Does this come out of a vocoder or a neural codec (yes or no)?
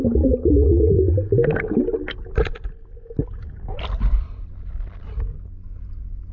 no